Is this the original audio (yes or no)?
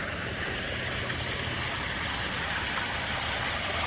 yes